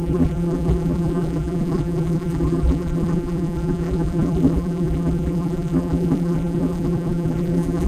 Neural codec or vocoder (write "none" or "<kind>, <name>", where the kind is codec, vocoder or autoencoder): vocoder, BigVGAN v2